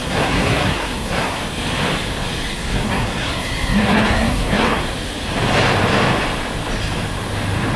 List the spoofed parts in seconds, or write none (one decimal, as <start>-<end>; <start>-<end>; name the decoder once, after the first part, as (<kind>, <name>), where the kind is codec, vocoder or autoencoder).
0.0-1.4 (codec, SNAC); 2.5-4.8